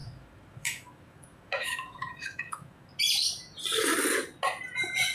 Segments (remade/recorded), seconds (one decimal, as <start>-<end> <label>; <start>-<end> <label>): 0.0-2.9 remade; 2.9-5.1 recorded